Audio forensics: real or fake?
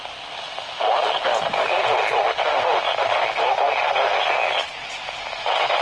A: real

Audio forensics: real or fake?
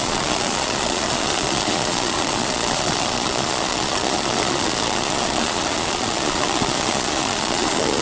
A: fake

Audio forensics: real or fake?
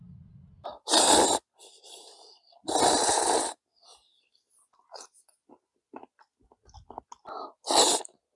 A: real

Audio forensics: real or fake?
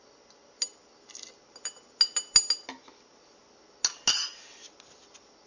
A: real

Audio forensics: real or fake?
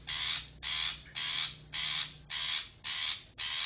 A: real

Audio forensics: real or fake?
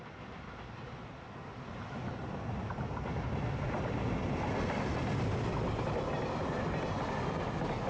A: real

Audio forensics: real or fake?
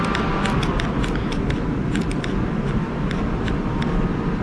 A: real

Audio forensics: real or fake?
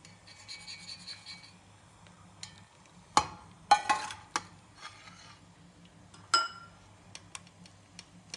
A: real